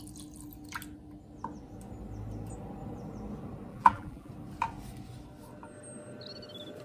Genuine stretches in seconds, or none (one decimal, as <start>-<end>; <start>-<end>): 0.0-3.7; 4.3-6.8